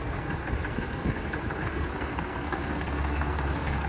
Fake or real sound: fake